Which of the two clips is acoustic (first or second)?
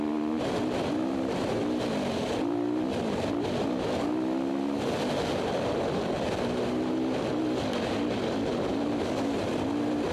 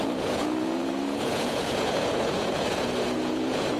first